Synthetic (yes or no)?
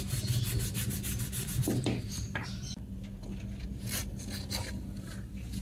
no